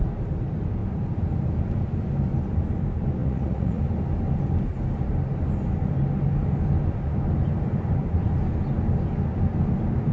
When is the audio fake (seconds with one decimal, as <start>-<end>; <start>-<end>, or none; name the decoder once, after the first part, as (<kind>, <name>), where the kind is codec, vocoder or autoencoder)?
3.2-3.8 (vocoder, Vocos)